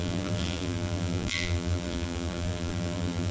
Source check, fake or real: fake